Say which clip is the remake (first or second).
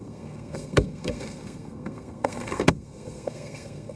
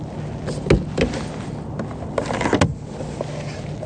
first